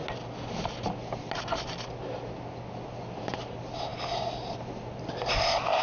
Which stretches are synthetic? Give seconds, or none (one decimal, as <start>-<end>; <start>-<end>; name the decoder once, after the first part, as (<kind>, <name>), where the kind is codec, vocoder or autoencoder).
none